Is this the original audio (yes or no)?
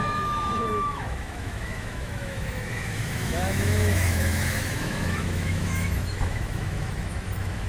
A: no